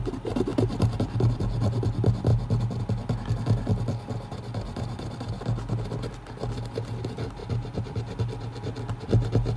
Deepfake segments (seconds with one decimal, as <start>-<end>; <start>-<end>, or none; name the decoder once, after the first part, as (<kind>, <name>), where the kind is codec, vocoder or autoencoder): none